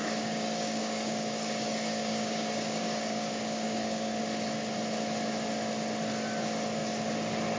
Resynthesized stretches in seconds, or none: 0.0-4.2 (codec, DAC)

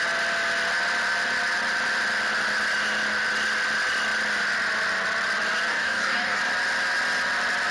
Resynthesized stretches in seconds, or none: 5.7-6.4 (codec, DAC)

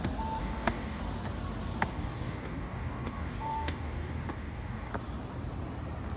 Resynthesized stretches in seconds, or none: 0.4-1.0 (codec, DAC); 1.9-4.9

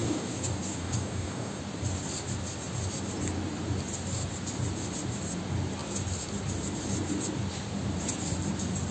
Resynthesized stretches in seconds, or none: 0.0-1.6 (codec, DAC)

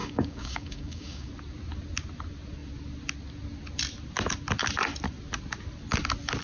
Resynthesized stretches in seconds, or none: 0.0-1.3 (codec, DAC)

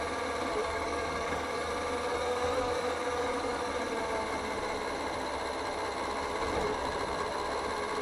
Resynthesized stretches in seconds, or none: 0.6-1.7 (codec, DAC); 2.1-3.7

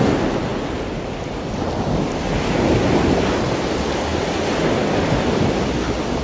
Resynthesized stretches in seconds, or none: none